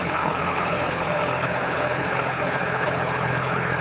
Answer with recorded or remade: remade